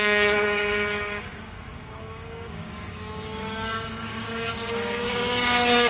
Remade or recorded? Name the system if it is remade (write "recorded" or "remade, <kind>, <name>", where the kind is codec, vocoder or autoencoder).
remade, codec, DAC